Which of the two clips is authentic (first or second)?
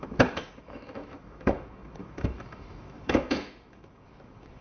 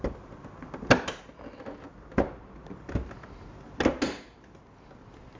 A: second